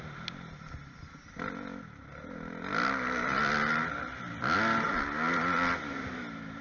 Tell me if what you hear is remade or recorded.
recorded